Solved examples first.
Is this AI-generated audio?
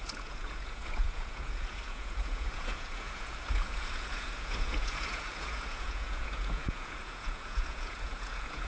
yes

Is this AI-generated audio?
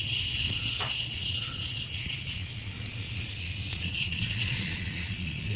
yes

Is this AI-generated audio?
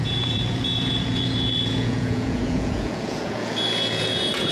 yes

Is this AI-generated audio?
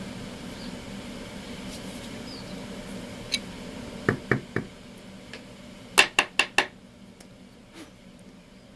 no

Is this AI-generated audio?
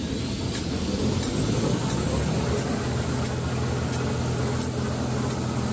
no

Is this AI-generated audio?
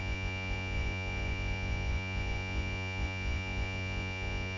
yes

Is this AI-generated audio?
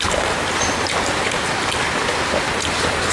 no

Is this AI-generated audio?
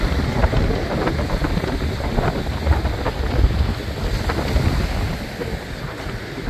no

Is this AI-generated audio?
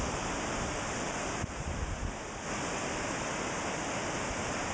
no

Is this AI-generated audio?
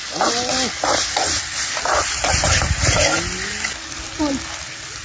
no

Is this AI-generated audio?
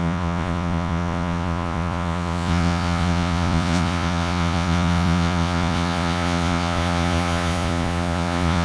yes